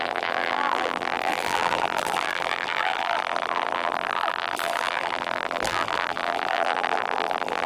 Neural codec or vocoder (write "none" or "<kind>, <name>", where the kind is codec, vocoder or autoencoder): vocoder, BigVGAN v2